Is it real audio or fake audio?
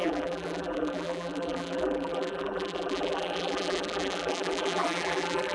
fake